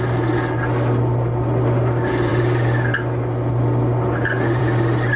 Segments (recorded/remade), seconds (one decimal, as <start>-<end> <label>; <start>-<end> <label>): 0.0-5.2 recorded